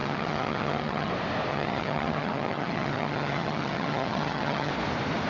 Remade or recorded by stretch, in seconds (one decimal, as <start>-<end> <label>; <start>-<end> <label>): 0.0-1.1 remade; 1.1-1.5 recorded; 1.5-4.7 remade; 4.7-5.3 recorded

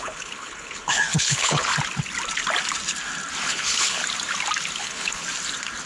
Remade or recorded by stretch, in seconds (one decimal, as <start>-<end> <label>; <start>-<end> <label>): 0.0-1.7 remade; 1.7-3.5 recorded; 3.5-4.0 remade; 4.0-4.8 recorded; 4.8-5.2 remade; 5.2-5.9 recorded

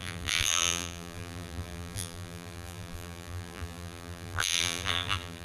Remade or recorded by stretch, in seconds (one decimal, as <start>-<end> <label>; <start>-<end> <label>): 0.0-5.4 remade

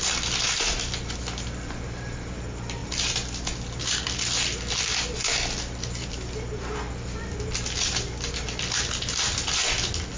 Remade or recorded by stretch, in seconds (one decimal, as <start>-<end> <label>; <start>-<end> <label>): 0.0-10.2 recorded

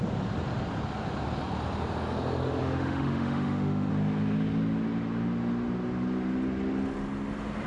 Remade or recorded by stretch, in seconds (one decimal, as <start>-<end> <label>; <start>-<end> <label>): 0.0-2.6 recorded; 2.6-3.9 remade; 3.9-7.7 recorded

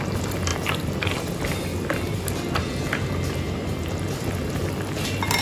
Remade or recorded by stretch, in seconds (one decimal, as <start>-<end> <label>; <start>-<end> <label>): 0.0-5.4 recorded

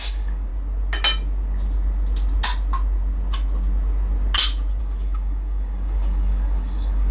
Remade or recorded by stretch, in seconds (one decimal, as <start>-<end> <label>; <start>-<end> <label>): 0.0-0.5 remade; 0.5-4.8 recorded; 4.8-7.1 remade

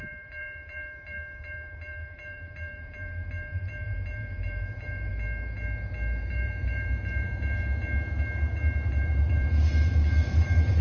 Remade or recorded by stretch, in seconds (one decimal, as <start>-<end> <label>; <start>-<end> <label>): 0.0-5.1 remade; 5.1-6.2 recorded; 6.2-7.6 remade; 7.6-8.9 recorded; 8.9-10.8 remade